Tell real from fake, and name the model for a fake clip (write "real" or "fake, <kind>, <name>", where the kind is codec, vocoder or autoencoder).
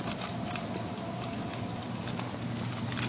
real